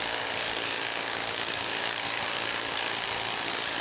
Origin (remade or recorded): remade